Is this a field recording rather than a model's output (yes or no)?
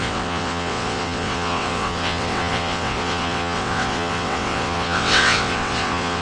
no